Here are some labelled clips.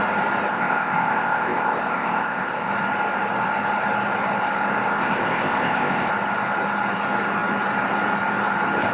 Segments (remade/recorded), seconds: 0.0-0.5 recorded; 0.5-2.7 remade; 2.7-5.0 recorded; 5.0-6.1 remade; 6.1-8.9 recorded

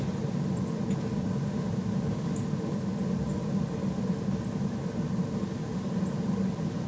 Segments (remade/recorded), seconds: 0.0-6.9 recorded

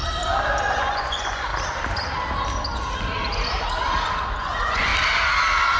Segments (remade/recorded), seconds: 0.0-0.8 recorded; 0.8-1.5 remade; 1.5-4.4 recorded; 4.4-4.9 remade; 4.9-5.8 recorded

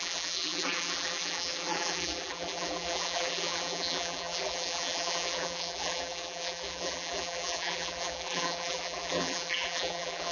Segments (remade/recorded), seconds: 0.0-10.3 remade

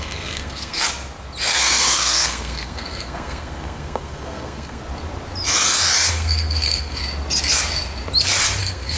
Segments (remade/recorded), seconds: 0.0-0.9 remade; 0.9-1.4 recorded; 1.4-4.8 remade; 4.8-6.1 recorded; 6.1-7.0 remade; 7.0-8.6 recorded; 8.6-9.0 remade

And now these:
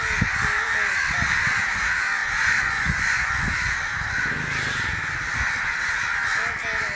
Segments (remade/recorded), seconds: 0.0-2.2 recorded; 2.2-3.3 remade; 3.3-6.9 recorded

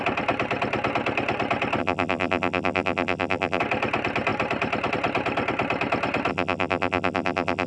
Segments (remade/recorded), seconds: 0.0-1.8 recorded; 1.8-3.6 remade; 3.6-6.3 recorded; 6.3-7.7 remade

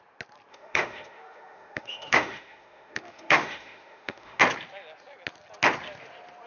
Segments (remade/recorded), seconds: 0.0-0.5 recorded; 0.5-4.4 remade; 4.4-6.5 recorded